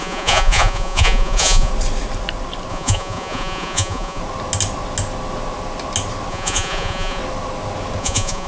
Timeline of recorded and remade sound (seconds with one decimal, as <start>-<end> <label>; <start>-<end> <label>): 0.0-1.7 remade; 1.7-2.7 recorded; 2.7-4.2 remade; 4.2-6.3 recorded; 6.3-7.2 remade; 7.2-8.0 recorded; 8.0-8.5 remade